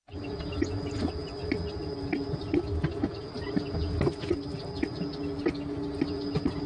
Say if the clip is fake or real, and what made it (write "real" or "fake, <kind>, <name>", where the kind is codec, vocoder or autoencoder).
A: real